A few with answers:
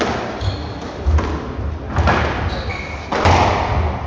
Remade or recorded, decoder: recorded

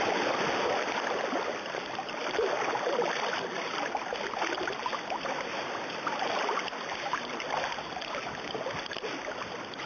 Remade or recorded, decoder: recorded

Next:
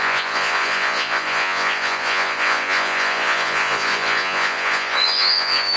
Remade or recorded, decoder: remade, vocoder, Vocos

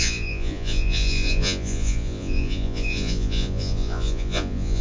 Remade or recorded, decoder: remade, vocoder, Vocos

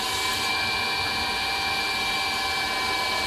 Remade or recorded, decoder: recorded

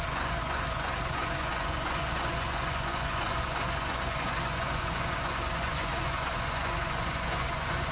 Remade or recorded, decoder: remade, vocoder, Vocos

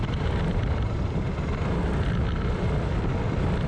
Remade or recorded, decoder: recorded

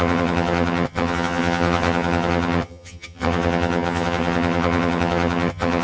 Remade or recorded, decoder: remade, vocoder, HiFi-GAN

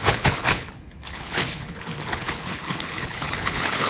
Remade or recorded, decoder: remade, codec, HILCodec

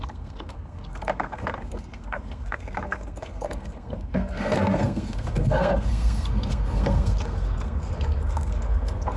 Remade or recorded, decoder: remade, codec, SNAC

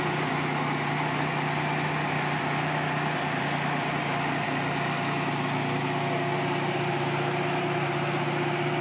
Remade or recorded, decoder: recorded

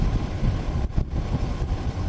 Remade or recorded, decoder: recorded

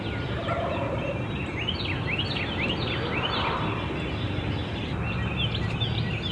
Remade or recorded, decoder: recorded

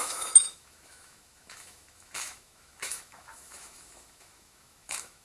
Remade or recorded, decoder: remade, autoencoder, DAC-VAE